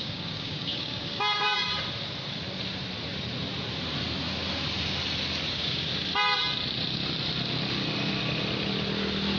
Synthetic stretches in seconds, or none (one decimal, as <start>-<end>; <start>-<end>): 0.0-1.7; 5.5-5.9